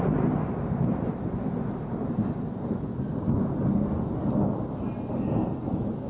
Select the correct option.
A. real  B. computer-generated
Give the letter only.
A